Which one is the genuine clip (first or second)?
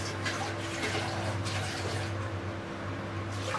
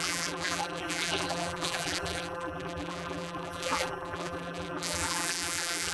first